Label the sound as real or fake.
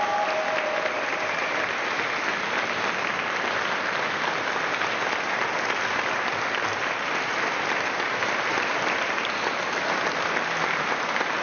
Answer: real